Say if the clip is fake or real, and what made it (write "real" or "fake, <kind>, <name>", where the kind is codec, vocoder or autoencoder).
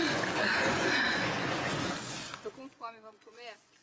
fake, vocoder, Vocos